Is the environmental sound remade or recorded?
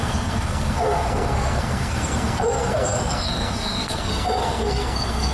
remade